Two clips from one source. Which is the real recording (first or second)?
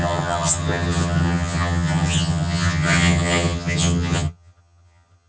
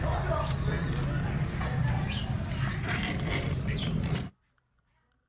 second